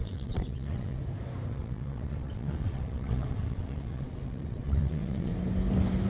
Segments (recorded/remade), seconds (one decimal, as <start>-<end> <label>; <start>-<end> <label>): 0.0-1.0 remade; 1.0-1.5 recorded; 1.5-5.3 remade; 5.3-6.1 recorded